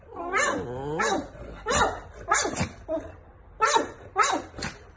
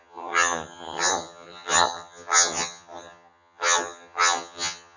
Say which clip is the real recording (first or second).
first